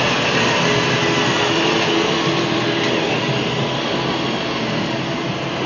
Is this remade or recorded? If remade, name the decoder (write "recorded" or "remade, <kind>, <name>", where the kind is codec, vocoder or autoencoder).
recorded